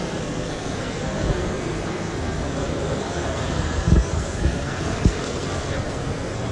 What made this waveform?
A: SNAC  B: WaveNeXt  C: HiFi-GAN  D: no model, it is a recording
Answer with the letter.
A